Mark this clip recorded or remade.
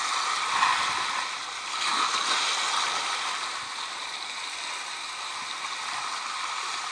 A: recorded